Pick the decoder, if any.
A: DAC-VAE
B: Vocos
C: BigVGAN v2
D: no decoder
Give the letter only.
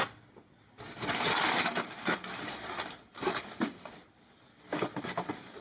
D